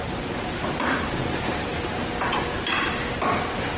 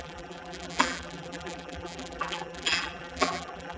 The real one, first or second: first